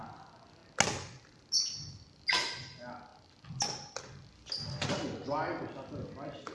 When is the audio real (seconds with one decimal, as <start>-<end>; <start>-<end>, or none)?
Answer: 0.0-6.5